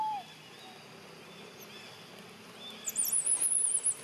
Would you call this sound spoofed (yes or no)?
no